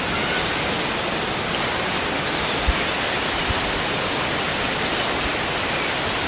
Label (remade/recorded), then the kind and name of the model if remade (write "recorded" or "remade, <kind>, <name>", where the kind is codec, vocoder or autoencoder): recorded